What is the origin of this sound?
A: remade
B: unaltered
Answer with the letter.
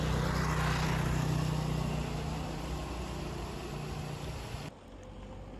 B